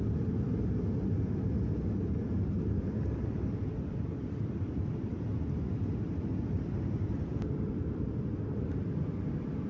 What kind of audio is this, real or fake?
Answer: fake